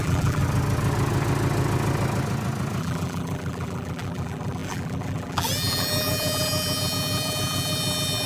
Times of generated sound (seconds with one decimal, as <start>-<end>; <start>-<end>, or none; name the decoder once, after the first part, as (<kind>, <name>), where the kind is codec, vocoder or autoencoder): 0.0-0.4 (vocoder, BigVGAN v2); 2.8-8.3